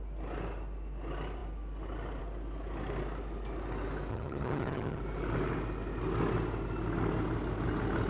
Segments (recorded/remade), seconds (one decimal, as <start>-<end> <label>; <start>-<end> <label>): 0.0-4.1 recorded; 4.1-5.0 remade; 5.0-8.1 recorded